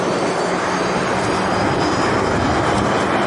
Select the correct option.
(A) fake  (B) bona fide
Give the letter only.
B